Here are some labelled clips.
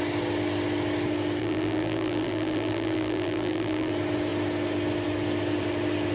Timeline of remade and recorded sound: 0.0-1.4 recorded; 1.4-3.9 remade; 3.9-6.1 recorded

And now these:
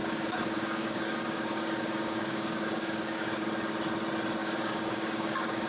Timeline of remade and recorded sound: 0.0-3.4 remade; 3.4-4.4 recorded; 4.4-5.7 remade

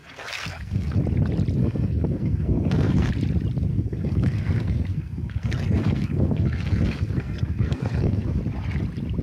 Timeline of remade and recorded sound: 0.0-1.0 remade; 1.0-1.6 recorded; 1.6-3.1 remade; 3.1-3.7 recorded; 3.7-8.4 remade; 8.4-9.2 recorded

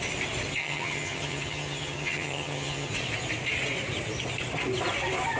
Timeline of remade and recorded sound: 0.0-0.6 recorded; 0.6-2.9 remade; 2.9-5.4 recorded

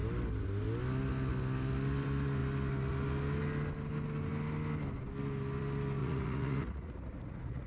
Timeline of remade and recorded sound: 0.0-6.0 recorded; 6.0-7.7 remade